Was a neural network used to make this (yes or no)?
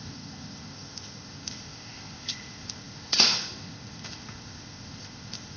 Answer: yes